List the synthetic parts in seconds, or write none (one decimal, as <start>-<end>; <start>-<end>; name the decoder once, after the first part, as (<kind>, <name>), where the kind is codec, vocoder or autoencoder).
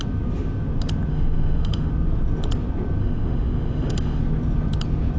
1.1-1.9 (autoencoder, DAC-VAE); 3.0-4.2